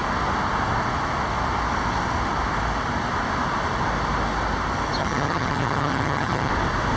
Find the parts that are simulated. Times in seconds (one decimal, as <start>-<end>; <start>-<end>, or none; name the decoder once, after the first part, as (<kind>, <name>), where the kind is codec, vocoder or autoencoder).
5.0-6.5 (vocoder, HiFi-GAN)